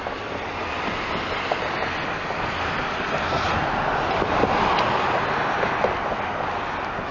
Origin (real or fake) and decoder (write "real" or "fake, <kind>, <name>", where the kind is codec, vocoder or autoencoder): real